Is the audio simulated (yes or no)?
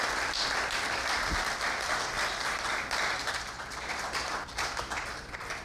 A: yes